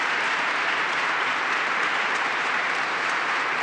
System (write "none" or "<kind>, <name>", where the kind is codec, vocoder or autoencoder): vocoder, BigVGAN v2